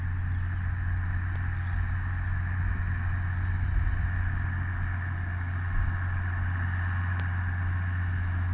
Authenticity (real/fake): real